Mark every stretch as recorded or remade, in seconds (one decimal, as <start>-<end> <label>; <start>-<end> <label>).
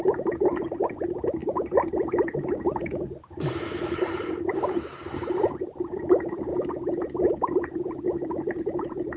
0.0-6.5 remade; 6.5-7.3 recorded; 7.3-9.2 remade